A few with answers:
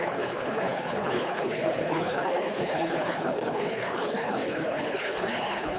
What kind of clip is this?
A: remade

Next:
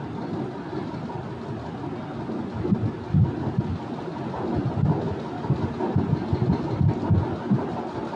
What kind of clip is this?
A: recorded